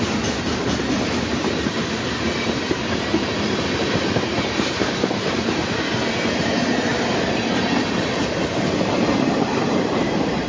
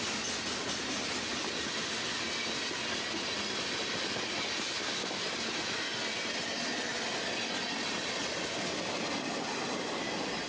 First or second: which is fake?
first